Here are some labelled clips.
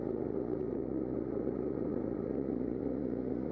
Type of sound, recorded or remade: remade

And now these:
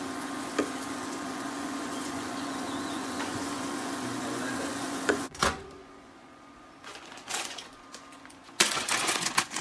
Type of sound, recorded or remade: remade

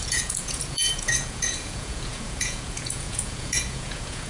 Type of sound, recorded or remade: remade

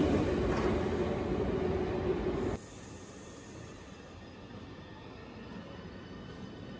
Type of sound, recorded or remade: recorded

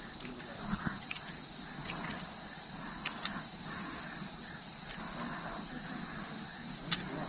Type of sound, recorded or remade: recorded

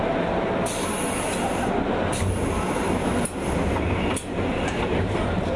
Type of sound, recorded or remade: recorded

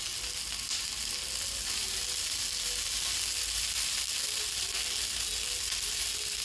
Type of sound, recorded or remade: recorded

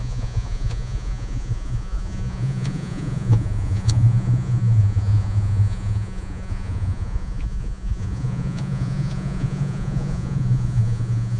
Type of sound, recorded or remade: remade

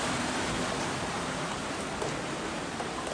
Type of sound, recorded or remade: recorded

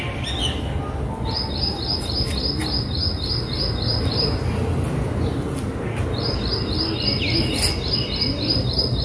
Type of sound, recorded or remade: recorded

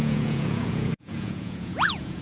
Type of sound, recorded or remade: remade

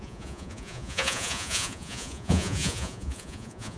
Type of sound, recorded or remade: remade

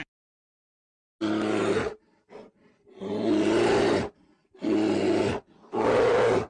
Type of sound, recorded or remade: recorded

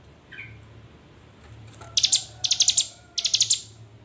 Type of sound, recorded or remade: recorded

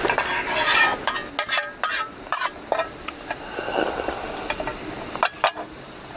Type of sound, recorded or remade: recorded